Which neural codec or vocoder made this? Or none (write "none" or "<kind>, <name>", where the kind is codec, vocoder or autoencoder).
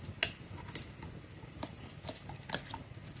none